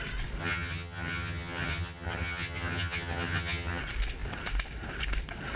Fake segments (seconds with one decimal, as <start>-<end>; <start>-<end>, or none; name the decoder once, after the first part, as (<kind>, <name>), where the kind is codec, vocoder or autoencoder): 0.4-3.8 (vocoder, HiFi-GAN)